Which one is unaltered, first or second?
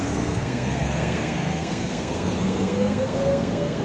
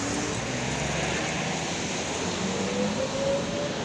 second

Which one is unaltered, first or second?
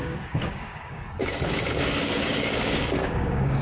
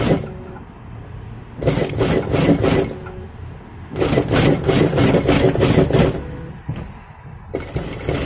second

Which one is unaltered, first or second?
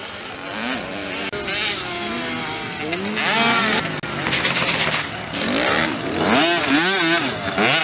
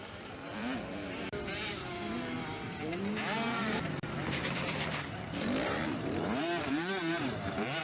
first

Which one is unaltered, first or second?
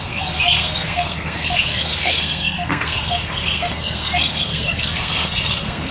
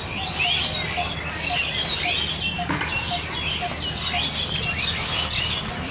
second